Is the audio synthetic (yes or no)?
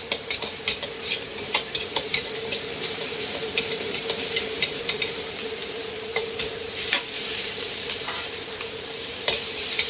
yes